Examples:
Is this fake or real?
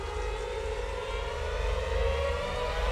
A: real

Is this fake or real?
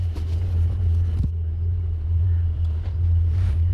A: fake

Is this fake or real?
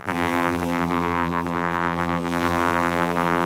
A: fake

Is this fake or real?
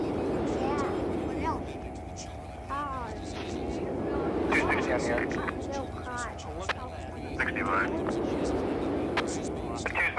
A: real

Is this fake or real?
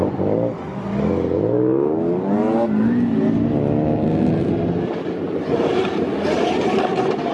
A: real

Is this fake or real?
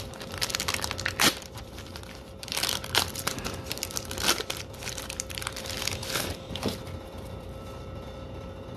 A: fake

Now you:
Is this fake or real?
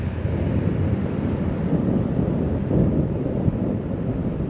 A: fake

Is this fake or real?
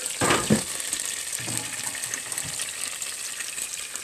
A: real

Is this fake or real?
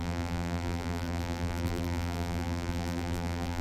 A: fake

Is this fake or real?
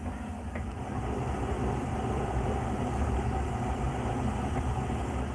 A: real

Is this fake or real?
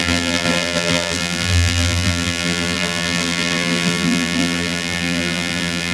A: fake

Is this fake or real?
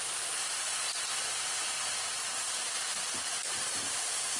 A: real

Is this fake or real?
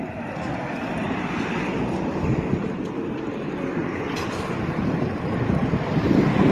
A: fake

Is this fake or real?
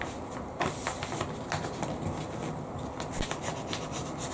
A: real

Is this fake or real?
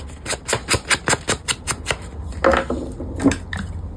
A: real